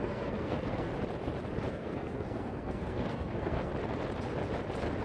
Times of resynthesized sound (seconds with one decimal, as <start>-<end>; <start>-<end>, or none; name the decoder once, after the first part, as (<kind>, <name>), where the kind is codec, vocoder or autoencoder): 0.0-0.9 (codec, SNAC); 1.7-3.7